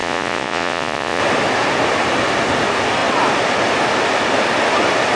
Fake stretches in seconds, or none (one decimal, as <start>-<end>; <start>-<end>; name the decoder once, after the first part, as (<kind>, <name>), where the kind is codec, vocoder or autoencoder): 0.0-1.2 (vocoder, Vocos)